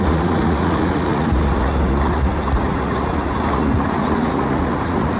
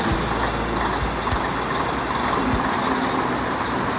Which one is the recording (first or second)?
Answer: second